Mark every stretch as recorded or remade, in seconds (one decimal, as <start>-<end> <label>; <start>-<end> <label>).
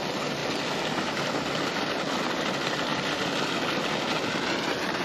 0.0-5.0 recorded